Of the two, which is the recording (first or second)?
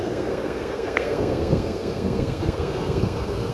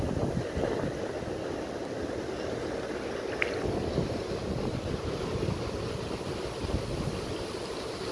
second